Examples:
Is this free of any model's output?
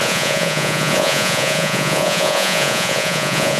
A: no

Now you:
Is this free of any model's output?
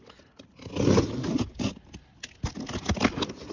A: yes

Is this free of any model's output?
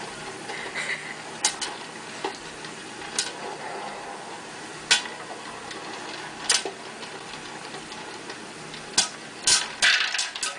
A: yes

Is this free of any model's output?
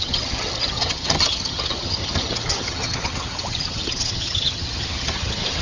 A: no